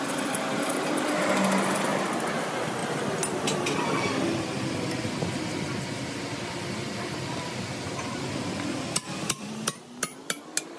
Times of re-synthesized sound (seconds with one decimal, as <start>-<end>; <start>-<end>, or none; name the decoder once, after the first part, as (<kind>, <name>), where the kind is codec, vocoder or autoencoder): none